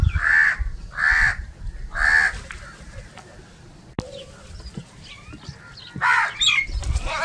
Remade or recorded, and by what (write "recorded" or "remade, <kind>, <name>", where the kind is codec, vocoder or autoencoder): recorded